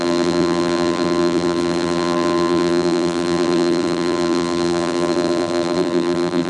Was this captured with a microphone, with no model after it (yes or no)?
no